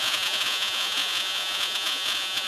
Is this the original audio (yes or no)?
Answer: no